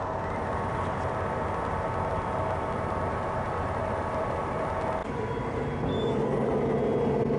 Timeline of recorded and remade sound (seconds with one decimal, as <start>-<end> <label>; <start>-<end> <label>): 0.0-7.4 recorded